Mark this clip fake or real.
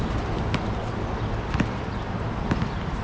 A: real